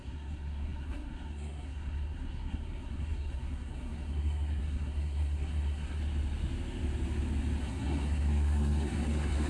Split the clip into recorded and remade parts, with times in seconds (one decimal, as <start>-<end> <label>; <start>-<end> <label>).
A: 0.0-6.0 remade; 6.0-7.6 recorded; 7.6-9.5 remade

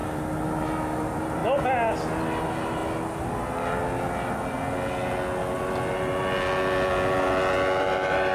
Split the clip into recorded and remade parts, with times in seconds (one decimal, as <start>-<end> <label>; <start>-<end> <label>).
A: 0.0-1.0 recorded; 1.0-1.4 remade; 1.4-2.4 recorded; 2.4-2.8 remade; 2.8-7.8 recorded; 7.8-8.3 remade

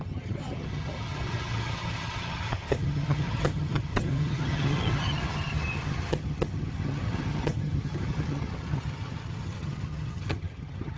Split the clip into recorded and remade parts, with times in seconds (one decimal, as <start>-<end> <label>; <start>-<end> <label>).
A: 0.0-11.0 remade

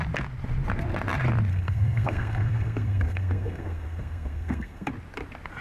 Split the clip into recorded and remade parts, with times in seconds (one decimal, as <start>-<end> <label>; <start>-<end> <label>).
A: 0.0-1.5 recorded; 1.5-4.9 remade; 4.9-5.6 recorded

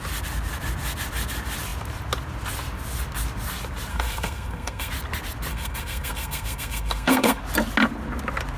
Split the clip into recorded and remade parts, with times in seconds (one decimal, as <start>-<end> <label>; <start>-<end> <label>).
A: 0.0-3.9 recorded; 3.9-4.9 remade; 4.9-5.5 recorded; 5.5-7.4 remade; 7.4-8.6 recorded

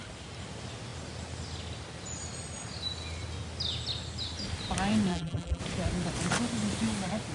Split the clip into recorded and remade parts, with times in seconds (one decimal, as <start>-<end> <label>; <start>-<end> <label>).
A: 0.0-5.1 recorded; 5.1-5.6 remade; 5.6-7.3 recorded

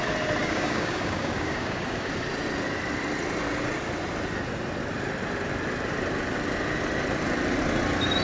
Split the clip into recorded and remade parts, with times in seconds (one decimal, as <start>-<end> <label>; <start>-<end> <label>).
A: 0.0-0.4 recorded; 0.4-2.1 remade; 2.1-8.2 recorded